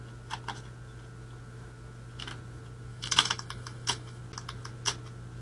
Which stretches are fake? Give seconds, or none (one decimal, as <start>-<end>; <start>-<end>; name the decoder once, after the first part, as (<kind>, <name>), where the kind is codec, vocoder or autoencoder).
2.9-4.2 (autoencoder, DAC-VAE)